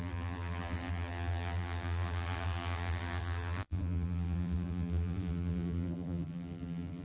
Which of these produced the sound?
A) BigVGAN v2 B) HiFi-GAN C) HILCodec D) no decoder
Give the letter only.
A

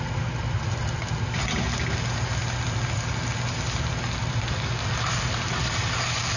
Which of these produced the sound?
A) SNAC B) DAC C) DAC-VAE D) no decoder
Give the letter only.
D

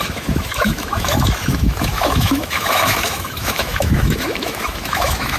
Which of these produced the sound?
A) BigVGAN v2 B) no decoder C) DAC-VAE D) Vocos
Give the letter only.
C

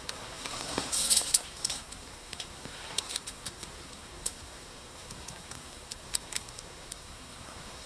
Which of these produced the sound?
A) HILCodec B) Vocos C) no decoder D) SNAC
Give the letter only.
D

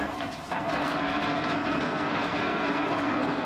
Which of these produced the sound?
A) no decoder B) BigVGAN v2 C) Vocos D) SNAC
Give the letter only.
D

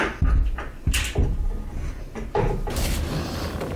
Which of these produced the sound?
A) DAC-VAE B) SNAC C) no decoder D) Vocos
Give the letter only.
C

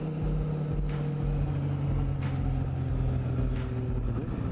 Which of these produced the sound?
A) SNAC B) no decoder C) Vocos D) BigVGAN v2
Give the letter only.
B